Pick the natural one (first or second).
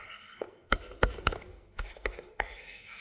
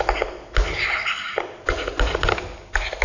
second